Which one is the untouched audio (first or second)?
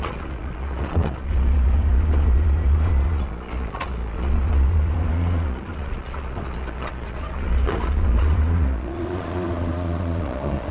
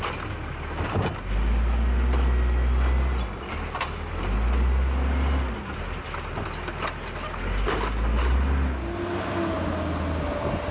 second